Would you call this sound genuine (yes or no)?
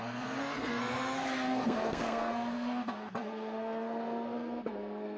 no